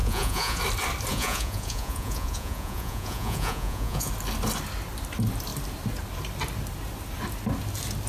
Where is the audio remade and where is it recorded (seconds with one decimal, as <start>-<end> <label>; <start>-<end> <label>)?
0.0-0.6 remade; 0.6-1.1 recorded; 1.1-4.1 remade; 4.1-8.1 recorded